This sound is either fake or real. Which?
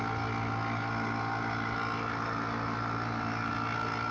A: real